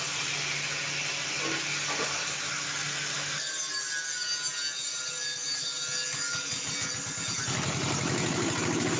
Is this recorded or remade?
recorded